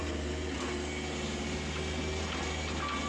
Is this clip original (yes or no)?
yes